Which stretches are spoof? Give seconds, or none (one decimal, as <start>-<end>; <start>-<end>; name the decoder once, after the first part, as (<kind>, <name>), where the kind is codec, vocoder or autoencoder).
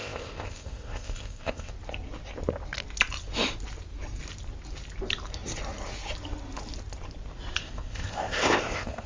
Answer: 0.0-1.7 (codec, ZipCodec); 7.6-9.1